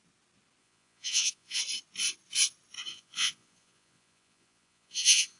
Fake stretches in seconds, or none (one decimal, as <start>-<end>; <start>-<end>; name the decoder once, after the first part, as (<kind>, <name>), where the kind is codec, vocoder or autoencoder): 0.6-1.6 (vocoder, Vocos); 2.9-5.4